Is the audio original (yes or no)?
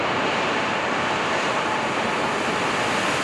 yes